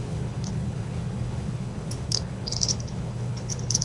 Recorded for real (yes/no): no